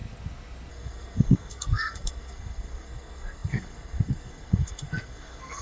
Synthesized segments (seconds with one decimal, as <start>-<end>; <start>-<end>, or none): 0.7-5.6